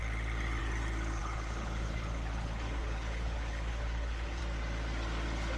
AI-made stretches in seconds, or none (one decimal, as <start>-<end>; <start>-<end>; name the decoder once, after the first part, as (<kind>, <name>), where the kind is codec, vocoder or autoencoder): 1.2-4.4 (codec, HILCodec)